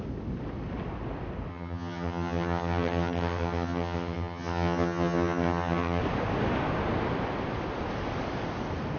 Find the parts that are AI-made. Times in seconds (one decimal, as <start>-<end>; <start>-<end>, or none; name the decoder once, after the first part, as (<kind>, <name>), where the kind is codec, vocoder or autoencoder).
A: 1.5-6.0 (vocoder, HiFi-GAN)